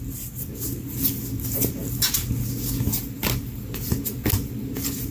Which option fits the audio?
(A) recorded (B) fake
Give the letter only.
A